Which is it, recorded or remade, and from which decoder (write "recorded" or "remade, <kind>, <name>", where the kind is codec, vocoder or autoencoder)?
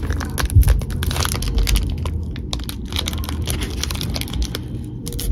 recorded